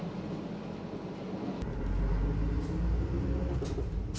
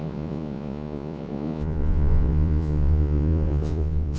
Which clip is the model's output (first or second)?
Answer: second